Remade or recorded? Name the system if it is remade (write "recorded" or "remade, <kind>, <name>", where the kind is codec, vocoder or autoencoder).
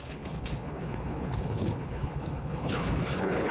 remade, codec, HILCodec